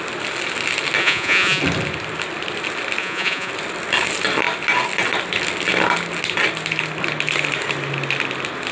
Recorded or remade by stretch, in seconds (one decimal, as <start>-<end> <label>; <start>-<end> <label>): 0.0-1.0 recorded; 1.0-1.6 remade; 1.6-3.0 recorded; 3.0-3.5 remade; 3.5-8.7 recorded